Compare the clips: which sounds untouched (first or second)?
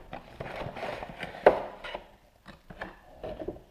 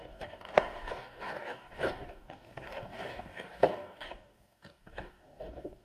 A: first